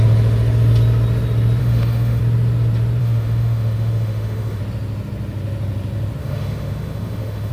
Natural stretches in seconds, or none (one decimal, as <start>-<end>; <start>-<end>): 0.0-1.6; 2.2-3.0; 4.6-6.2

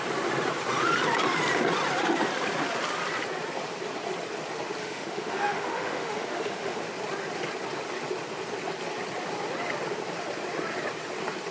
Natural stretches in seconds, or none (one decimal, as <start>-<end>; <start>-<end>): 0.0-4.8; 6.8-11.5

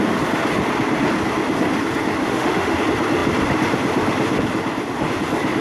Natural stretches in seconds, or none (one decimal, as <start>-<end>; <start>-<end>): 0.0-2.2; 2.8-5.6

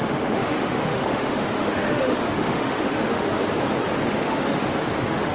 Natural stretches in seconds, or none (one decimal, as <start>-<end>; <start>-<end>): 3.4-4.1

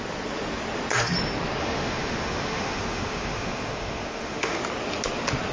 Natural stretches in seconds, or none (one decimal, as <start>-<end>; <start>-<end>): 0.0-1.6; 4.6-5.5

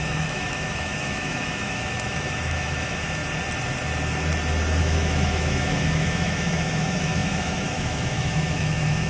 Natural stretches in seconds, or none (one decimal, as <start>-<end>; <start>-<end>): 3.2-4.8